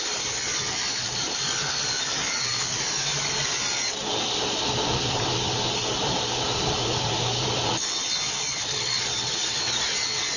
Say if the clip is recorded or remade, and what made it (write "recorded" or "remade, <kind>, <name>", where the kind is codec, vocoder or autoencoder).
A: recorded